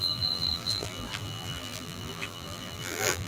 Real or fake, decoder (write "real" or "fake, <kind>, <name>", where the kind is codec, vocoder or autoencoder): fake, vocoder, BigVGAN v2